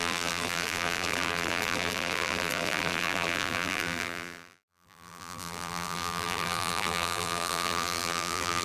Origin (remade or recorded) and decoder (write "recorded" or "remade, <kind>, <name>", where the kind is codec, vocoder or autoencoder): remade, vocoder, BigVGAN v2